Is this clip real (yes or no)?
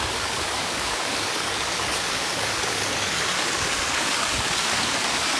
no